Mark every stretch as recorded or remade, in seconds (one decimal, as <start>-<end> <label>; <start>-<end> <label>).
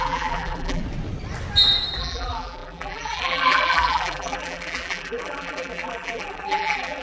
0.0-0.8 remade; 0.8-2.0 recorded; 2.0-7.0 remade